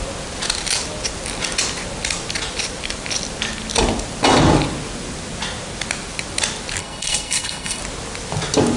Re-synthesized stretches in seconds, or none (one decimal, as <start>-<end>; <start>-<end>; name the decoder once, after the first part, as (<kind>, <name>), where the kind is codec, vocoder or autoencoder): 6.8-7.8 (codec, SNAC)